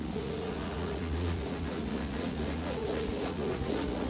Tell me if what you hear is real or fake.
fake